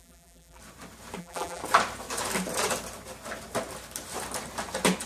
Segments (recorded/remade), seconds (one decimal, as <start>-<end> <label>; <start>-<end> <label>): 0.0-0.6 remade; 0.6-1.2 recorded; 1.2-1.6 remade; 1.6-5.1 recorded